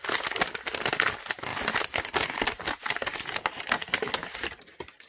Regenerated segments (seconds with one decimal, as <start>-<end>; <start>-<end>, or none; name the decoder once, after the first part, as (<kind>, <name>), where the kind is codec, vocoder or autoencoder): none

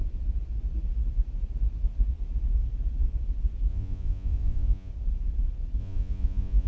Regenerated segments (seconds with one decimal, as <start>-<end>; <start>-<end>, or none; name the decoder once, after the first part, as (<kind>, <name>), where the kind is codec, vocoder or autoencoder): 3.7-4.9 (vocoder, Vocos); 5.8-6.7

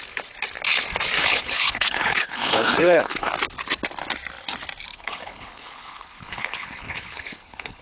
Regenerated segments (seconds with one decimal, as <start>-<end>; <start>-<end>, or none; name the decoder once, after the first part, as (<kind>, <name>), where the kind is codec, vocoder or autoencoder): 1.2-3.3 (codec, HILCodec); 4.9-7.8

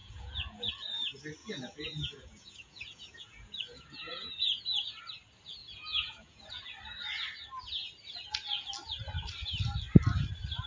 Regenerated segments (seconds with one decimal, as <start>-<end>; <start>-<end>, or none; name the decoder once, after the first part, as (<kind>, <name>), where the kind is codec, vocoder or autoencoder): 0.0-0.7 (vocoder, Vocos); 1.4-5.0; 5.6-6.6

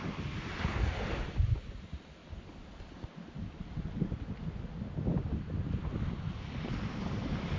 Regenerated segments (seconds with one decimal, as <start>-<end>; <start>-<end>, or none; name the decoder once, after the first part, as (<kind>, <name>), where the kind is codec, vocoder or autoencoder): none